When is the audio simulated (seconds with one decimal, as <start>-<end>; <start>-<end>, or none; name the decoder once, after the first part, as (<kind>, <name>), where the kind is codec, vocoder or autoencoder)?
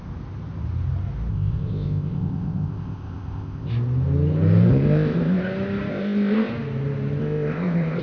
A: 1.3-3.7 (codec, ZipCodec); 4.7-5.4; 5.9-6.5; 7.2-8.0